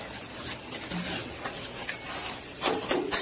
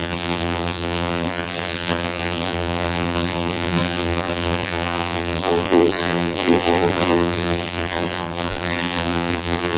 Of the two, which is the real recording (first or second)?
first